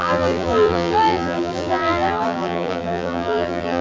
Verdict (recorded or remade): remade